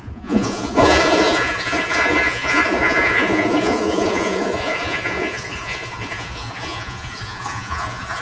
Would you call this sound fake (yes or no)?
yes